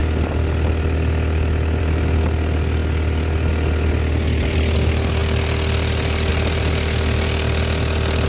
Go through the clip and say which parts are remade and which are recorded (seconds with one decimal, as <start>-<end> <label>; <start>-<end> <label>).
0.0-8.3 recorded